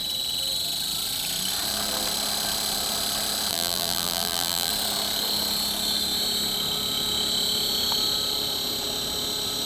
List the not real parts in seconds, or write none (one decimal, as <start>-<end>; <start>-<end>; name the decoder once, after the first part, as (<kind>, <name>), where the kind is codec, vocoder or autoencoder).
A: 3.5-4.7 (vocoder, BigVGAN v2)